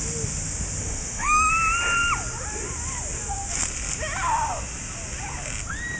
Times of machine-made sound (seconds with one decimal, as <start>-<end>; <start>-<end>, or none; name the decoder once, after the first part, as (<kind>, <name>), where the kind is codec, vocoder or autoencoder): 0.8-1.5 (autoencoder, DAC-VAE)